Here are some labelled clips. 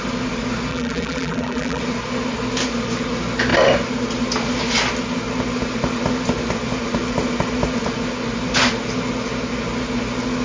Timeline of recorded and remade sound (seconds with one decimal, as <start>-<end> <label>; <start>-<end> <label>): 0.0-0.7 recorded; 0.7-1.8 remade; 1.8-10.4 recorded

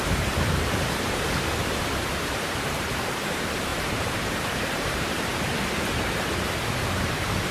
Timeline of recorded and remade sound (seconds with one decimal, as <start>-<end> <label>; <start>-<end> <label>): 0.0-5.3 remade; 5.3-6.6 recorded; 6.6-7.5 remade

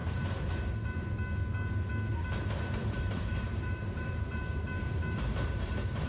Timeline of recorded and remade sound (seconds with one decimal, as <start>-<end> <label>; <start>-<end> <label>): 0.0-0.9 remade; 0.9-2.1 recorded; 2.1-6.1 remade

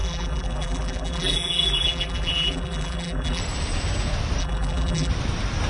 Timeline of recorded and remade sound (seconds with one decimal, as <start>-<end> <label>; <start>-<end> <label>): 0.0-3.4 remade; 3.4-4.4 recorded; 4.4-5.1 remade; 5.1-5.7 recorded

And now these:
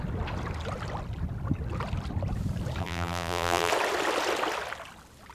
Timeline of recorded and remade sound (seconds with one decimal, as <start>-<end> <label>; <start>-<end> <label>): 0.0-2.8 recorded; 2.8-3.7 remade; 3.7-5.3 recorded

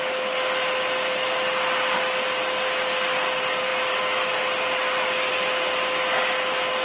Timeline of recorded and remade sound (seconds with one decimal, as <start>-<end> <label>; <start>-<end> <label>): 0.0-6.8 recorded

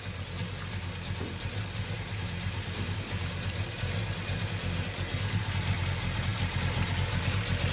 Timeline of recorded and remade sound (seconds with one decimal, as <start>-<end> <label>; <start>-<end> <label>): 0.0-7.7 recorded